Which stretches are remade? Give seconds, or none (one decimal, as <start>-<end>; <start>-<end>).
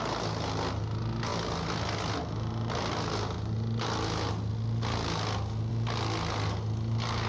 none